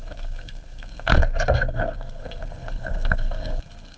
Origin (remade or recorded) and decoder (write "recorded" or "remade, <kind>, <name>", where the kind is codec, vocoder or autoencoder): remade, codec, SNAC